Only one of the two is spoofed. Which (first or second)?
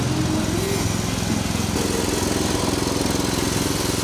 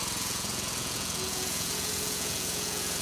second